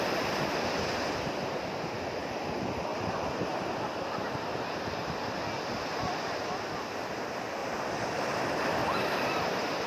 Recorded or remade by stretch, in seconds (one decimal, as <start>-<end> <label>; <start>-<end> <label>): 0.0-2.9 recorded; 2.9-3.9 remade; 3.9-7.6 recorded; 7.6-8.2 remade; 8.2-8.8 recorded; 8.8-9.3 remade; 9.3-9.9 recorded